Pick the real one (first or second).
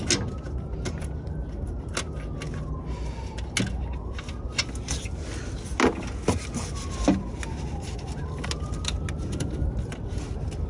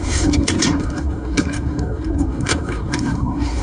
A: first